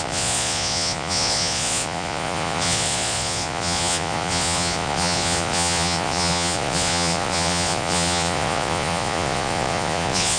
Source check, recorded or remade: remade